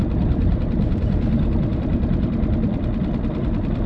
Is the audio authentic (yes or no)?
no